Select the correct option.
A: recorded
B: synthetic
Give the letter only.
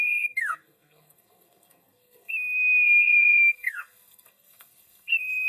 B